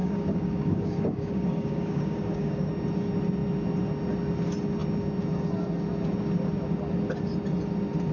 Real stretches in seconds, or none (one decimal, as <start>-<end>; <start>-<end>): 2.7-8.1